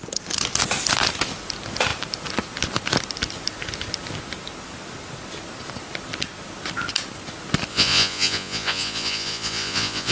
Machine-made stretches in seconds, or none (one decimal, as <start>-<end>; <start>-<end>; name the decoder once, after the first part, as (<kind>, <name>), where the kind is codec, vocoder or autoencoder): 7.7-10.1 (vocoder, Vocos)